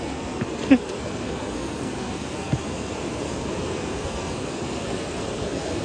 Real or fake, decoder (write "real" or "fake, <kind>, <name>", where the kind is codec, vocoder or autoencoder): fake, codec, SNAC